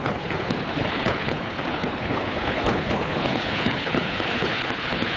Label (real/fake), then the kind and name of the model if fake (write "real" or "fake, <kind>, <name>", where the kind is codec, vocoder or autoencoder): fake, codec, HILCodec